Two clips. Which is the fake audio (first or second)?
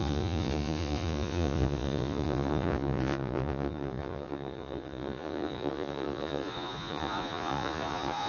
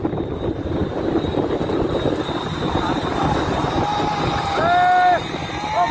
first